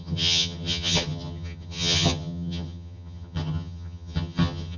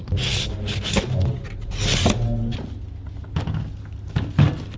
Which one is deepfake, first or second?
first